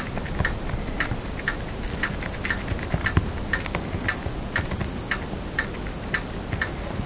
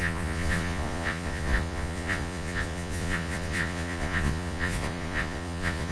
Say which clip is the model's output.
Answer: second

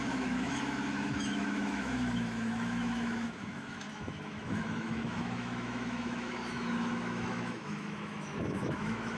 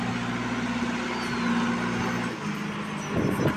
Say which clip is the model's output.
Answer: first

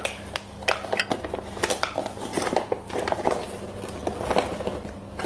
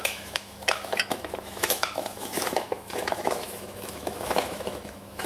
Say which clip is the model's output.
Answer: second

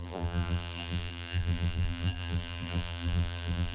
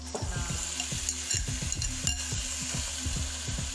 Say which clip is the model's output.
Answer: first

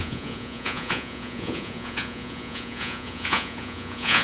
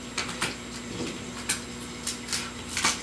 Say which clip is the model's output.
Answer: first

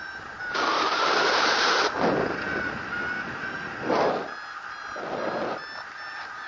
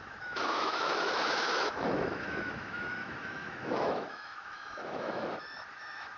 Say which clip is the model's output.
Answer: second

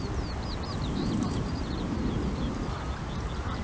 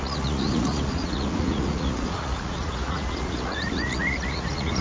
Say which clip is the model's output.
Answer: second